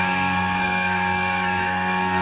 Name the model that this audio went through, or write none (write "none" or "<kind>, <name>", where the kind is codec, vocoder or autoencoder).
codec, SNAC